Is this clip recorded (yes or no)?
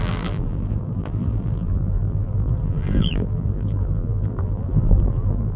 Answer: no